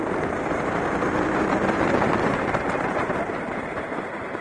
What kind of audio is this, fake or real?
fake